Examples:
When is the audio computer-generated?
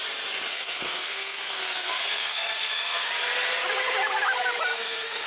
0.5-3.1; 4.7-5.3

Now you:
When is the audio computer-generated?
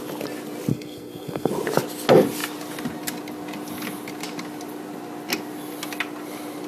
0.7-1.5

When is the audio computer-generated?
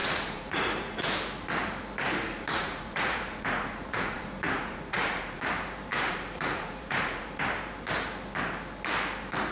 0.0-1.1; 2.3-5.4; 5.9-7.4